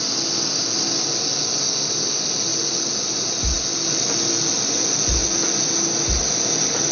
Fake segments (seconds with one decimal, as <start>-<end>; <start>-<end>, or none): none